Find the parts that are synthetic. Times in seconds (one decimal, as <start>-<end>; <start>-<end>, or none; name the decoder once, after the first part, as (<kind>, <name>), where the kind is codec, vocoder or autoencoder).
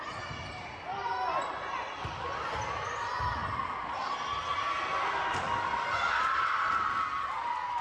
none